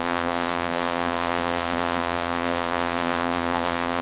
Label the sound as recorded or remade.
remade